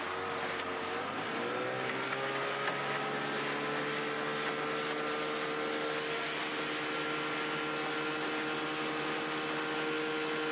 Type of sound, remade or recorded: recorded